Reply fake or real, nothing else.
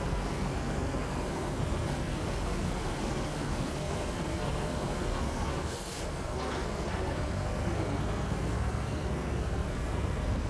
fake